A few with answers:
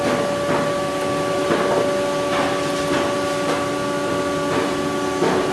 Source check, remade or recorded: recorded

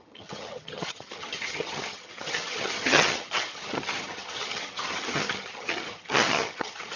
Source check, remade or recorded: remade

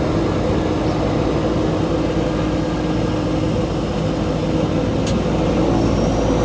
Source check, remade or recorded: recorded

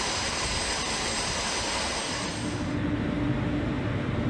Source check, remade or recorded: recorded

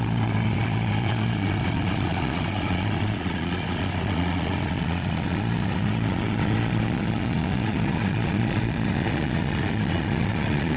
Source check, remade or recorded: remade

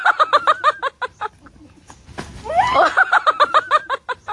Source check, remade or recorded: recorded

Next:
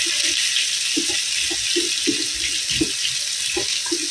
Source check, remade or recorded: recorded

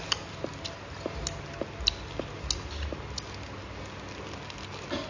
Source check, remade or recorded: recorded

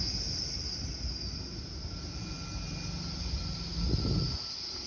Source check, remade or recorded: recorded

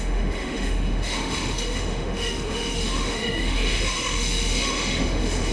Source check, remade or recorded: remade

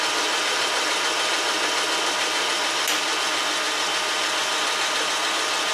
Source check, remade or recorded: recorded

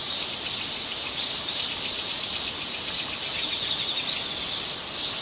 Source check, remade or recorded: recorded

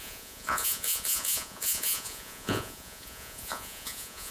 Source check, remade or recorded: remade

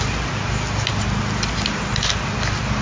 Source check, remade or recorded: recorded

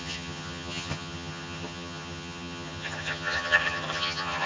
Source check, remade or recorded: remade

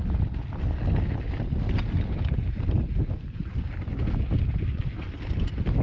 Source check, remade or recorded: recorded